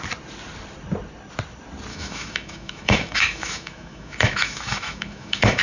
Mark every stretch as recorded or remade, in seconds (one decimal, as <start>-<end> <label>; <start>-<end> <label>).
0.0-1.9 recorded; 1.9-5.6 remade